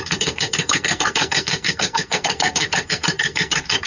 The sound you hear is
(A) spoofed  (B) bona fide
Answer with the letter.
A